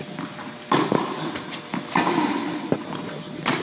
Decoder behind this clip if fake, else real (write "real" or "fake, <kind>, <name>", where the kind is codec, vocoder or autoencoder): real